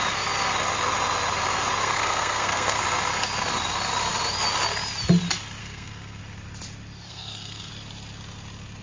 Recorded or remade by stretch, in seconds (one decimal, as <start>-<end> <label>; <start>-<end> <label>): 0.0-1.8 recorded; 1.8-2.8 remade; 2.8-5.6 recorded; 5.6-6.2 remade; 6.2-7.1 recorded; 7.1-7.7 remade; 7.7-8.8 recorded

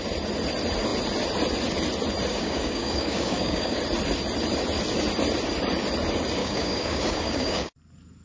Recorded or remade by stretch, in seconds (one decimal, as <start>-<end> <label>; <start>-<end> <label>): 0.0-2.3 recorded; 2.3-3.8 remade; 3.8-6.4 recorded; 6.4-7.7 remade; 7.7-8.2 recorded

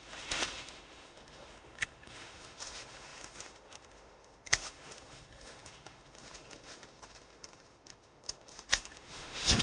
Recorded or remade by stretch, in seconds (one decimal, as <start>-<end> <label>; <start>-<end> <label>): 0.0-9.6 remade